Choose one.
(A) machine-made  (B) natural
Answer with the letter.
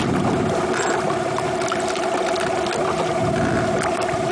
B